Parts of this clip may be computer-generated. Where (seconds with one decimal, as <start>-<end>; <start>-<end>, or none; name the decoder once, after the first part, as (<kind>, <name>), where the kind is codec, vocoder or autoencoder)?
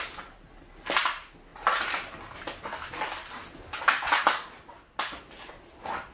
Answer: none